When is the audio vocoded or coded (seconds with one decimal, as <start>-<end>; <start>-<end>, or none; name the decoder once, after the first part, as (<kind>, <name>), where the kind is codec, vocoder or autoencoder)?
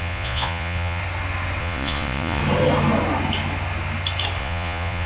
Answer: 0.0-1.0 (vocoder, Vocos); 1.6-2.4; 4.4-5.1